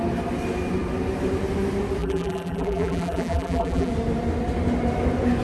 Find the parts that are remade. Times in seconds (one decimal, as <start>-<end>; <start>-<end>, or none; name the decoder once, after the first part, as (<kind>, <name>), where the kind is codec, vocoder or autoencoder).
2.0-3.9 (vocoder, BigVGAN v2)